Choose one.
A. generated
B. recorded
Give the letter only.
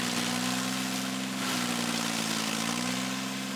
B